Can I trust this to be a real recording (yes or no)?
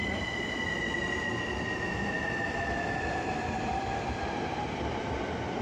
no